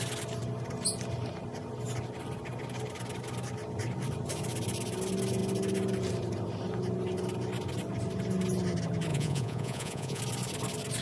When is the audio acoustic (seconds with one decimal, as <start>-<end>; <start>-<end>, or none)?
0.0-9.1; 10.2-11.0

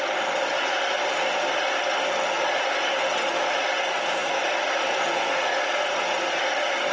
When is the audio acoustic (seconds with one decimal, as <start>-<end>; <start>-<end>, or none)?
0.0-6.9

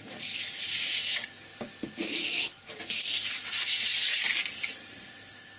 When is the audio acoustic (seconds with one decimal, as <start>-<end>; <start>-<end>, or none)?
0.0-1.5; 2.7-5.6

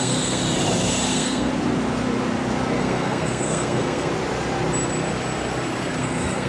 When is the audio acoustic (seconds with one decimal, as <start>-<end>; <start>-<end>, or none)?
0.4-1.1; 1.5-2.8; 4.1-6.0

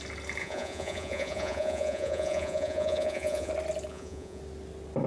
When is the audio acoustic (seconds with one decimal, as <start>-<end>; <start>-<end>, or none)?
0.0-0.4; 3.5-3.9; 4.4-5.1